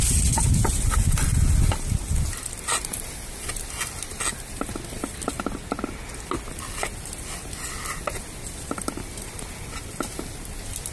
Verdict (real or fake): real